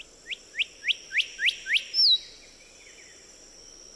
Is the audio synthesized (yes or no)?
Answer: no